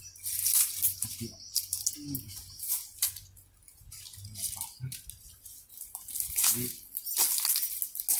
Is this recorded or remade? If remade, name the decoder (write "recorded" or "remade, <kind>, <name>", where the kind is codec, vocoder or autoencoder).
recorded